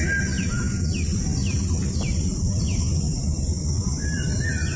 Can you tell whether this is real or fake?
real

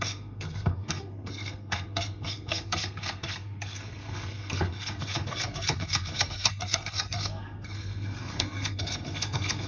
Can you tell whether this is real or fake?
fake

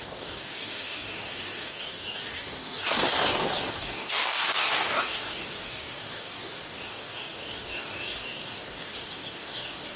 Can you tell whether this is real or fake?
fake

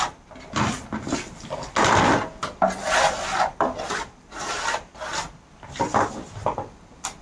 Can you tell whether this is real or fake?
real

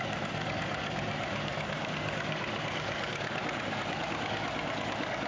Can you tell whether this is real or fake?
fake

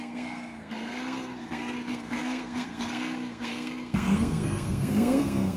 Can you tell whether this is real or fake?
fake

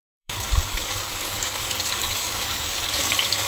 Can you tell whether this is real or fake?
fake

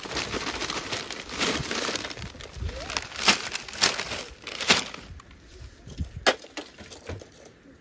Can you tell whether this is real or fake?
real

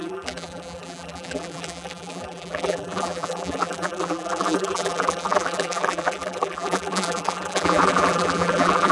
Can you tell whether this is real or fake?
fake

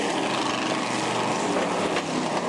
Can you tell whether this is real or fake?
real